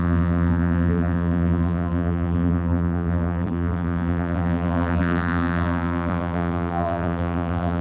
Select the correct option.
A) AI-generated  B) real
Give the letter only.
A